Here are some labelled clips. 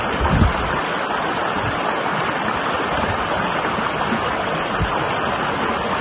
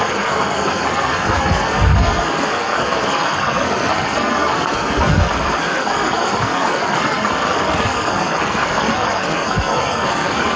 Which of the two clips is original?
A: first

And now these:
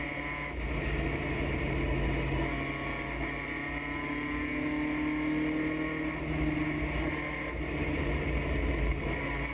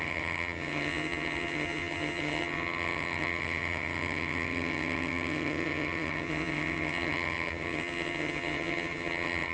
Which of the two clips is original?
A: first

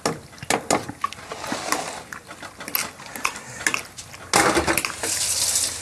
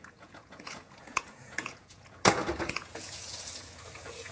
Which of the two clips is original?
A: first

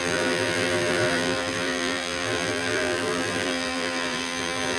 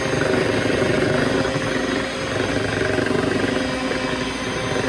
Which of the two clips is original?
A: second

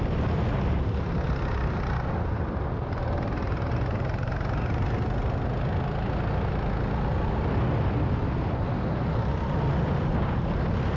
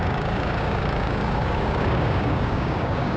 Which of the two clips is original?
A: first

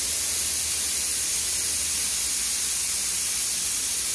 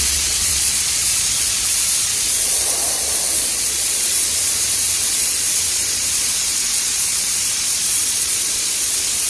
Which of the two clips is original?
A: first